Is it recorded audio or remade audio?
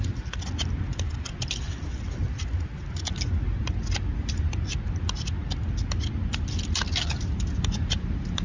recorded